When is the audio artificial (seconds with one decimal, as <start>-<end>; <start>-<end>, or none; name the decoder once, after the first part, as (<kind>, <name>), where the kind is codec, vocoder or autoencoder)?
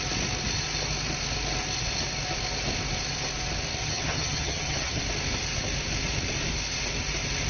3.8-5.0 (vocoder, HiFi-GAN)